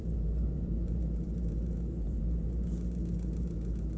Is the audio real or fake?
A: fake